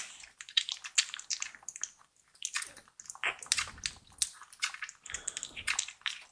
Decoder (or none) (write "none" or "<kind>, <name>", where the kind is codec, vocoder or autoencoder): none